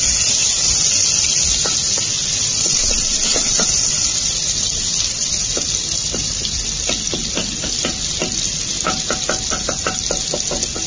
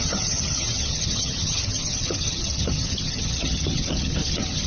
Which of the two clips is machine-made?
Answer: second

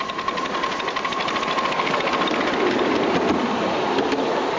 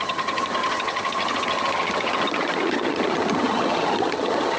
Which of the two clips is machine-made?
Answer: second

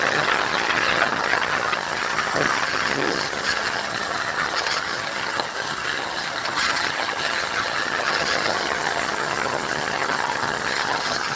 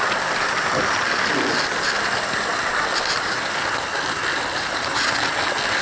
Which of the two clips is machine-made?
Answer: first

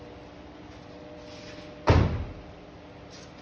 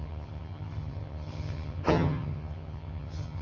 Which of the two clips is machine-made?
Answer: second